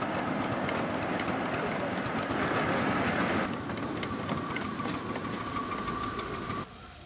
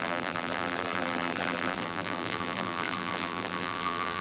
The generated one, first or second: second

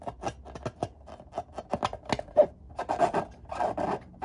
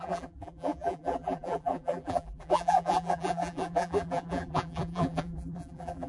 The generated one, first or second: second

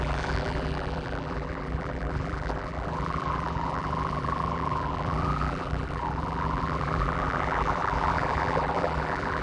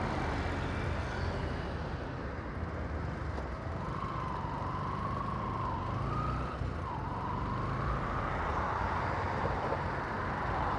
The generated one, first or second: first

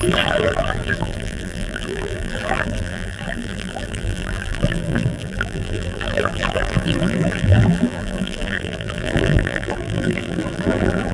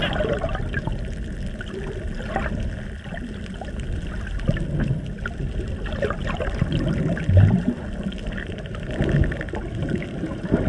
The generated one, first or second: first